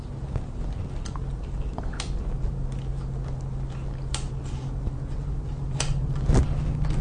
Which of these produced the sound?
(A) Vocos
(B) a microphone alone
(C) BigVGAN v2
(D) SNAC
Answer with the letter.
B